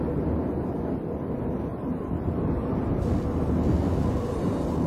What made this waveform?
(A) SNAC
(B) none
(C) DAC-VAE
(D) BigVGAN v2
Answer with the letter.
B